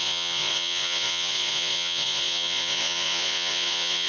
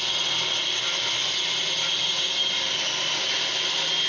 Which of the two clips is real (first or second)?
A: second